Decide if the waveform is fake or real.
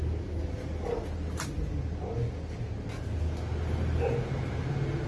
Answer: real